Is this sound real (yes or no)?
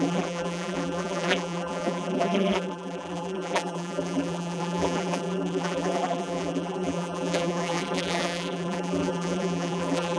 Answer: no